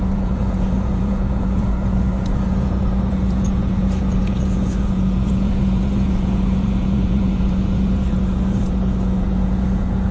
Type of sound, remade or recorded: remade